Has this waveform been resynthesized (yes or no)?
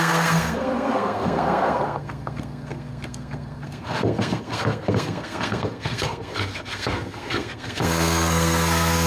yes